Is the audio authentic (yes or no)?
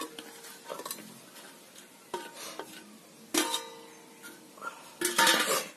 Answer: yes